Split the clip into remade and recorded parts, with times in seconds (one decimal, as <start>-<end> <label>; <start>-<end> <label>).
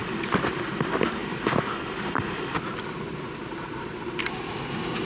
0.0-5.0 recorded